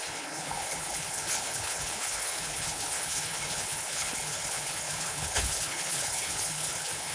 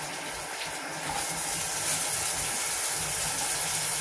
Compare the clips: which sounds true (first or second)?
second